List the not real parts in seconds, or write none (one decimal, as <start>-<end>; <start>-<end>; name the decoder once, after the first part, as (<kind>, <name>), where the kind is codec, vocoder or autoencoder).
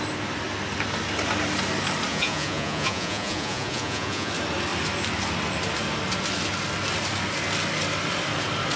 2.1-4.3 (vocoder, Vocos)